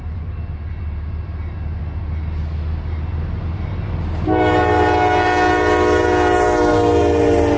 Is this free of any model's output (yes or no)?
yes